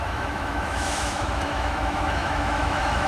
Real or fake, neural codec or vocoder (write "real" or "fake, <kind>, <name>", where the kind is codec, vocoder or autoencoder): fake, autoencoder, DAC-VAE